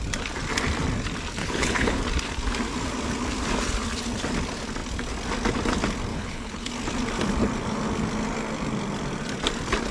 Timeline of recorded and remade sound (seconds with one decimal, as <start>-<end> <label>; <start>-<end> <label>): 0.0-1.4 recorded; 1.4-2.0 remade; 2.0-6.1 recorded; 6.1-6.7 remade; 6.7-9.9 recorded